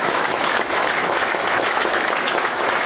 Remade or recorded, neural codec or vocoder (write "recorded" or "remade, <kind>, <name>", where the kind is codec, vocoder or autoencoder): remade, autoencoder, DAC-VAE